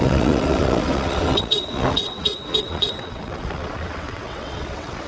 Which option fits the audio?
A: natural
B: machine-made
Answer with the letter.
B